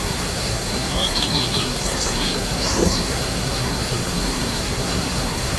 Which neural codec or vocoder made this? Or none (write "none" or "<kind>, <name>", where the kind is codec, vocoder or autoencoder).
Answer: codec, SNAC